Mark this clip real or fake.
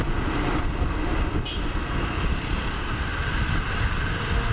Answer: real